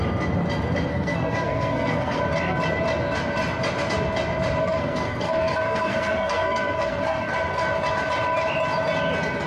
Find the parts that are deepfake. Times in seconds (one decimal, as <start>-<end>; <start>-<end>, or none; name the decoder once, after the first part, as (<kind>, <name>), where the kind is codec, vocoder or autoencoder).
0.9-2.2 (codec, SNAC); 4.6-7.6